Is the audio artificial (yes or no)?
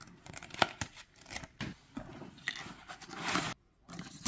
no